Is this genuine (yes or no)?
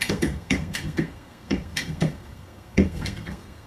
no